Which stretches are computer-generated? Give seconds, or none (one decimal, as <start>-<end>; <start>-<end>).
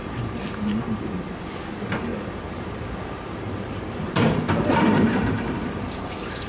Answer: 0.0-1.4; 2.1-6.0